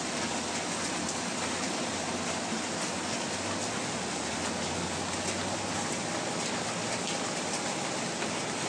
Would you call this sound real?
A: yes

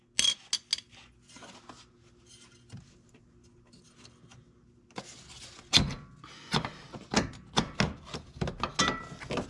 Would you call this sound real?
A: yes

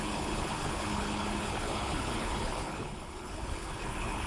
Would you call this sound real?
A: no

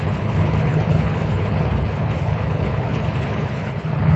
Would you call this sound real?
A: no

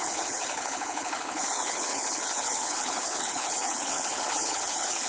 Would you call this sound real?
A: no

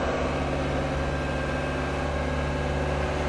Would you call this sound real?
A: yes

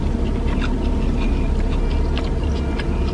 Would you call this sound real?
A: yes